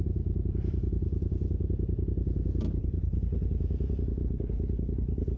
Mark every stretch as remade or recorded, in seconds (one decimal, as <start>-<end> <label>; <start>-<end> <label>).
0.0-2.8 recorded; 2.8-3.6 remade; 3.6-4.2 recorded; 4.2-5.4 remade